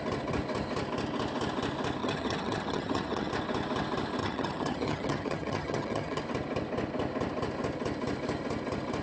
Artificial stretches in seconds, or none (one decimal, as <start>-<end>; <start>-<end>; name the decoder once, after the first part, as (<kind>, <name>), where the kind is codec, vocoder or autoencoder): 2.0-3.3 (vocoder, HiFi-GAN); 4.2-6.2